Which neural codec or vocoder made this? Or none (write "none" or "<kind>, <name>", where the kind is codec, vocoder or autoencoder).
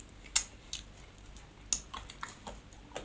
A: none